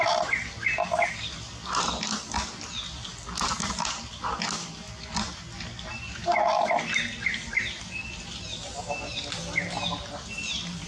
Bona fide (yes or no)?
yes